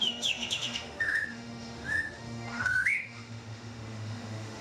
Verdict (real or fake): fake